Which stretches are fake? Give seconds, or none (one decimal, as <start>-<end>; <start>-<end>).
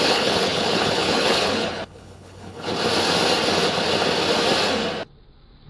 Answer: 0.0-2.7